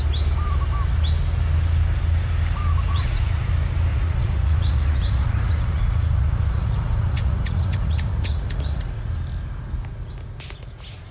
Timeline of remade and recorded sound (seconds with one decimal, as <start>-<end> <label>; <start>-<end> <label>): 0.0-2.9 recorded; 2.9-3.5 remade; 3.5-3.9 recorded; 3.9-9.1 remade; 9.1-11.1 recorded